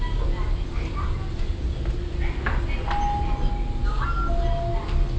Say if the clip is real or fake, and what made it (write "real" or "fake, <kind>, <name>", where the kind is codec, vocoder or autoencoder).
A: real